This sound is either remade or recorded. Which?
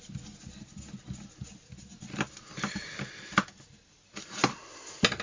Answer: recorded